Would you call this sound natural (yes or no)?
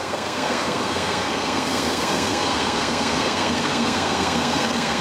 no